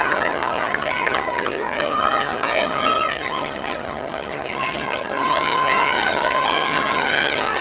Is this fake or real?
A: fake